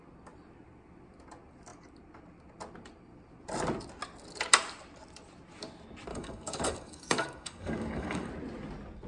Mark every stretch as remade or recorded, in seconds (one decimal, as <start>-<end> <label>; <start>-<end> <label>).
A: 0.0-6.1 recorded; 6.1-8.3 remade; 8.3-9.1 recorded